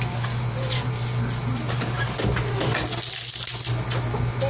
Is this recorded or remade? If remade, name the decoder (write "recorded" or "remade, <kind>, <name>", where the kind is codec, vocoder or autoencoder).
recorded